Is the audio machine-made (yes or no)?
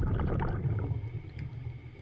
no